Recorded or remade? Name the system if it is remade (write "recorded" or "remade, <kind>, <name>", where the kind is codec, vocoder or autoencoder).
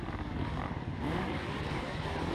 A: remade, codec, DAC